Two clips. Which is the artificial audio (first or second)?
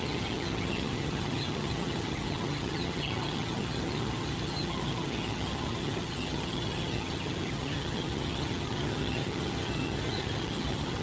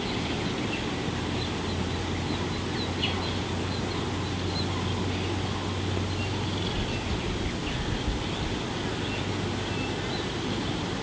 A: first